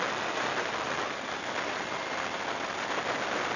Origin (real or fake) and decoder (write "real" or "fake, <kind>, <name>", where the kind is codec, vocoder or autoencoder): real